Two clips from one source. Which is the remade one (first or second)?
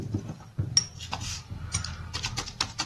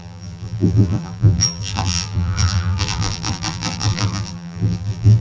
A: second